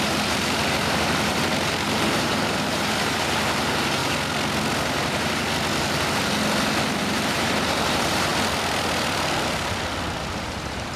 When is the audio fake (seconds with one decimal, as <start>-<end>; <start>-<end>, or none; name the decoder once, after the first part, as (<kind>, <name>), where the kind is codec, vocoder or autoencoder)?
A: 0.0-4.0 (vocoder, BigVGAN v2); 7.0-8.3; 10.3-11.0